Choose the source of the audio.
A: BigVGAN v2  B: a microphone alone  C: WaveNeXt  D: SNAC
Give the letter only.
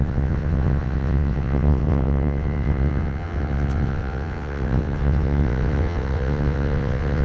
C